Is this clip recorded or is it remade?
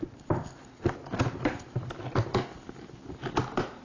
recorded